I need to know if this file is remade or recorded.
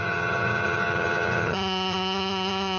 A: remade